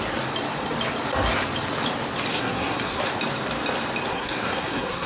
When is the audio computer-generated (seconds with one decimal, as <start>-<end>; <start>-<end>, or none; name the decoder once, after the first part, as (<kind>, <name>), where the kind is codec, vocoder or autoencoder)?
2.3-3.0 (codec, SNAC); 4.1-5.1